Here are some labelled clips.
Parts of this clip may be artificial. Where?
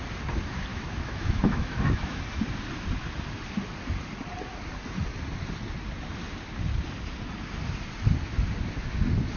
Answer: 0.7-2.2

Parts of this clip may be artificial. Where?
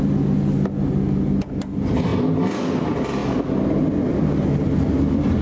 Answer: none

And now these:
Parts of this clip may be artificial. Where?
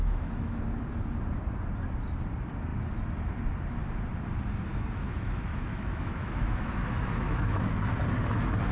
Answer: 0.0-0.6; 4.7-7.7